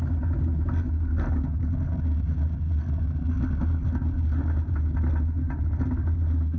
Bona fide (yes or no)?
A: yes